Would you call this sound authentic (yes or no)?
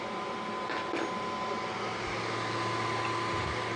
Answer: yes